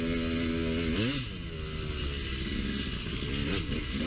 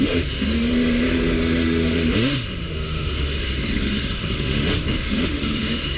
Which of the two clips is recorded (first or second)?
first